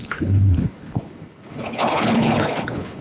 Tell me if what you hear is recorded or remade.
remade